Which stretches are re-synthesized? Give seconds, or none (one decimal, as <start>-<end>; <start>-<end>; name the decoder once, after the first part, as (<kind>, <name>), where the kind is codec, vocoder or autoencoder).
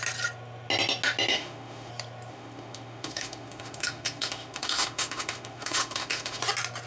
1.3-1.9 (autoencoder, DAC-VAE); 2.3-6.4